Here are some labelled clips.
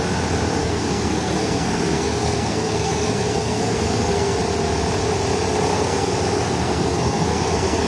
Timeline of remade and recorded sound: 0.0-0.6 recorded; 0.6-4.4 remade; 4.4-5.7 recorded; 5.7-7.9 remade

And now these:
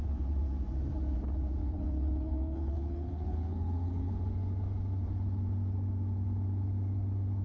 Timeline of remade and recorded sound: 0.0-1.6 recorded; 1.6-4.1 remade; 4.1-7.4 recorded

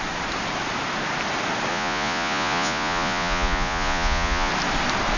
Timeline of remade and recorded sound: 0.0-1.7 recorded; 1.7-4.5 remade; 4.5-5.2 recorded

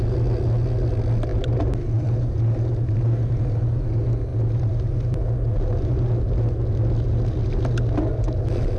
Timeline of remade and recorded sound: 0.0-8.8 recorded

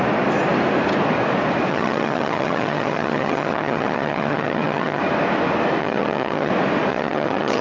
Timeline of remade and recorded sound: 0.0-1.7 recorded; 1.7-5.0 remade; 5.0-5.8 recorded; 5.8-6.5 remade; 6.5-6.9 recorded; 6.9-7.6 remade

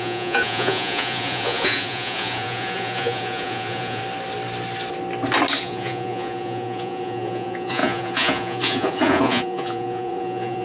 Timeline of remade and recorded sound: 0.0-4.0 remade; 4.0-5.6 recorded; 5.6-10.6 remade

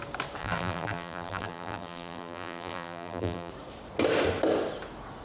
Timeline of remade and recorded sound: 0.0-0.4 recorded; 0.4-3.5 remade; 3.5-5.2 recorded